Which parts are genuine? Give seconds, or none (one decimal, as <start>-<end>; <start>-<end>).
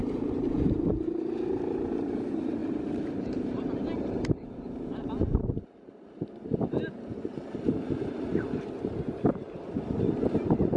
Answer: 1.2-2.6; 6.8-10.8